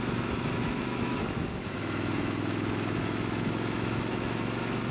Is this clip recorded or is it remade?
remade